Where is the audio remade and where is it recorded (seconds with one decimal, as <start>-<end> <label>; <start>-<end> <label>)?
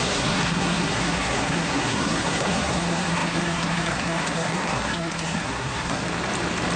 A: 0.0-6.0 remade; 6.0-6.8 recorded